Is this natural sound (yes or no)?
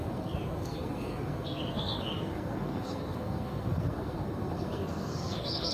no